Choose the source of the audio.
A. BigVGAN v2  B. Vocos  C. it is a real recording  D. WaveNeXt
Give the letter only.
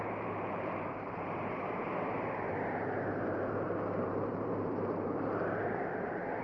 A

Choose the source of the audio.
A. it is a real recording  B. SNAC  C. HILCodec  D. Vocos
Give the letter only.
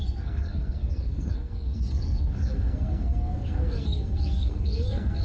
B